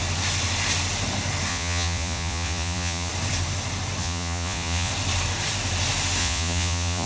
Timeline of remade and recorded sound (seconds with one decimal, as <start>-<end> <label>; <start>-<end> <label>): 0.0-1.5 recorded; 1.5-3.1 remade; 3.1-4.0 recorded; 4.0-4.9 remade; 4.9-6.2 recorded; 6.2-7.1 remade